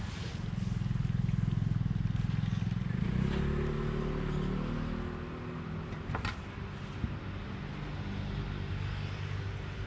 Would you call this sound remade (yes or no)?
no